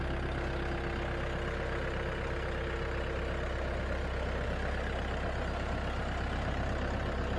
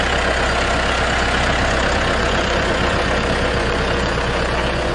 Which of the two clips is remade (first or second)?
second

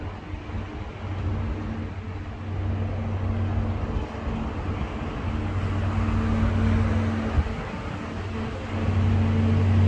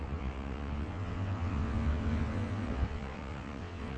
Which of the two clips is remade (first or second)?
second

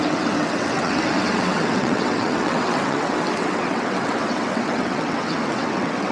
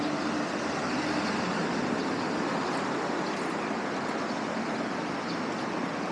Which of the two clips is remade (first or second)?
first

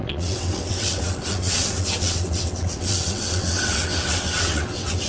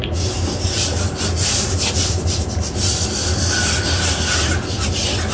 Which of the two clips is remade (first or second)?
first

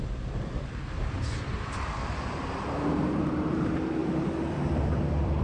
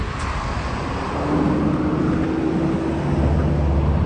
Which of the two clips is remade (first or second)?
first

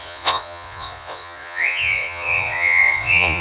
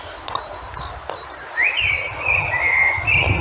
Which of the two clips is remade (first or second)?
first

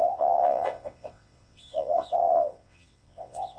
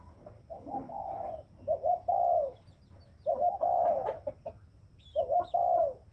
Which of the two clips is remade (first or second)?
first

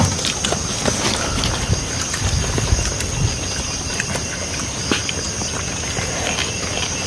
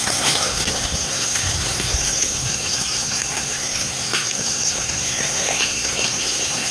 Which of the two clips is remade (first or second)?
second